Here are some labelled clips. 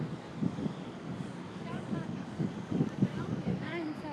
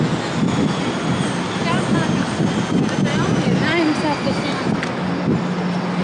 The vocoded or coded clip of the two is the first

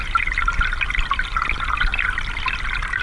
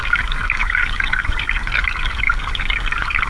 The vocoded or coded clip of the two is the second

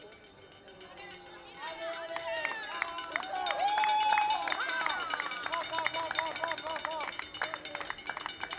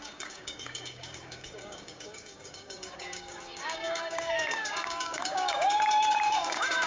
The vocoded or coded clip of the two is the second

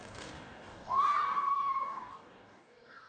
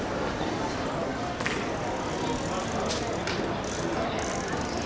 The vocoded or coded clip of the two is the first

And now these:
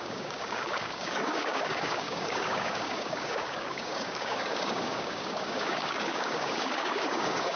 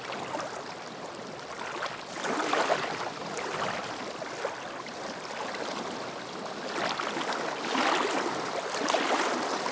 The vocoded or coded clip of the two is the first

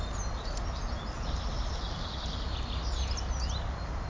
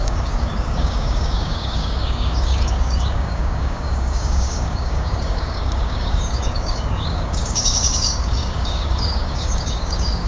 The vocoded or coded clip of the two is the second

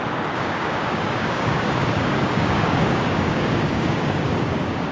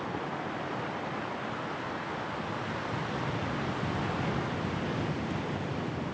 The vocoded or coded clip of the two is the first